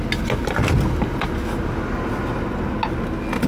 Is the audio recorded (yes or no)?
yes